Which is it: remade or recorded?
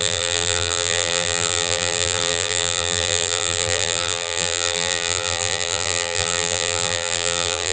remade